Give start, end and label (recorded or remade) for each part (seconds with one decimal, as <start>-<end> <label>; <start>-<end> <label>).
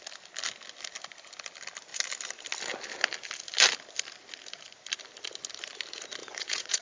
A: 0.0-6.2 recorded; 6.2-6.8 remade